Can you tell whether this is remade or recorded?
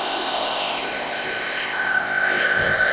remade